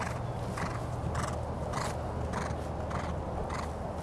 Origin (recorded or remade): recorded